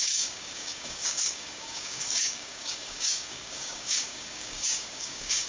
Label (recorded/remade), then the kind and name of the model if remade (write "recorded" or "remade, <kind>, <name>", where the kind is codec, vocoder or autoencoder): remade, codec, DAC